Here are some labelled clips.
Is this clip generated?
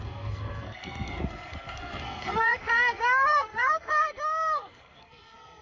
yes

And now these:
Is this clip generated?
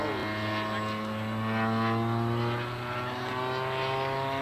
no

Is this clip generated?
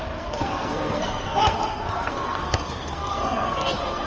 yes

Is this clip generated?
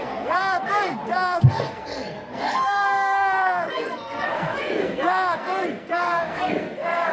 yes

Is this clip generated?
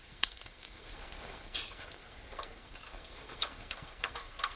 yes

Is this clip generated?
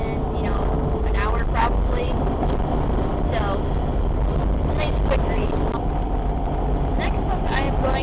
no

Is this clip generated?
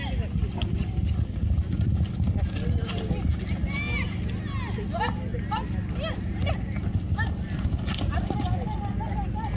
no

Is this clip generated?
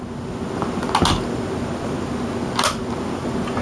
no